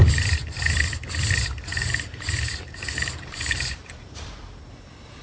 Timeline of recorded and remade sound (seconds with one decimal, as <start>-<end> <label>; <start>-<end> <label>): 0.0-1.7 recorded; 1.7-4.4 remade; 4.4-5.2 recorded